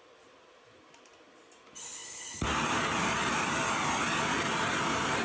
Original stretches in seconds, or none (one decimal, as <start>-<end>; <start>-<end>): 0.0-5.2